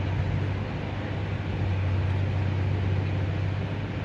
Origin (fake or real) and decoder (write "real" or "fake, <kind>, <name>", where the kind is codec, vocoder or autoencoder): real